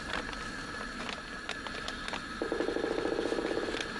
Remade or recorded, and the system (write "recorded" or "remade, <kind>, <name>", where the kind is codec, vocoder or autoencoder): recorded